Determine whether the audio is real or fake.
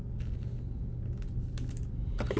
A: real